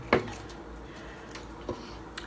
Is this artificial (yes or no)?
no